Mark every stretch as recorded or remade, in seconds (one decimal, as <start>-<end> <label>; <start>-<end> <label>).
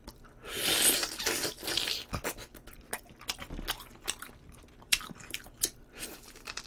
0.0-4.0 recorded; 4.0-6.7 remade